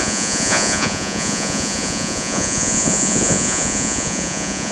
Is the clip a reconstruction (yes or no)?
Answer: yes